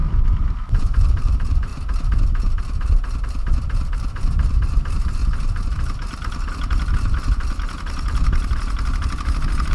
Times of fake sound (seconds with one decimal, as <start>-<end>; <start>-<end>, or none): 0.8-1.7; 3.2-5.2